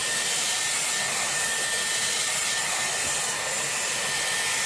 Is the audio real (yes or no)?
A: yes